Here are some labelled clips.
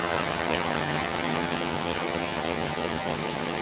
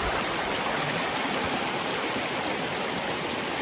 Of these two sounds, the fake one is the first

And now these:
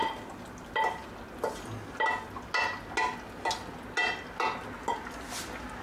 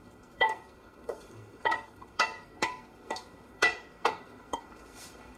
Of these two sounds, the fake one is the second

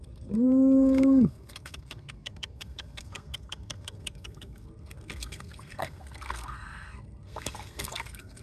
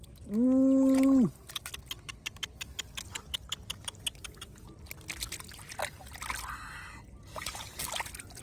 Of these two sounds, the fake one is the first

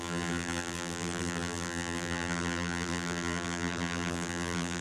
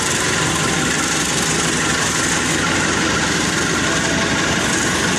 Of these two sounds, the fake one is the first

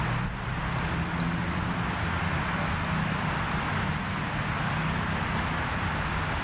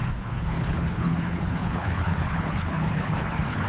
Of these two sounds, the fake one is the second